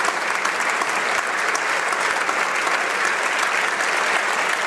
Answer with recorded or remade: recorded